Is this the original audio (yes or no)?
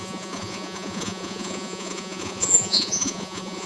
no